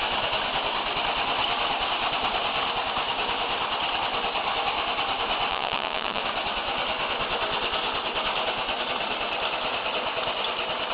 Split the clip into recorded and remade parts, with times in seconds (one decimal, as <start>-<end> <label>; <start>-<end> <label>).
0.0-5.5 recorded; 5.5-6.2 remade; 6.2-10.9 recorded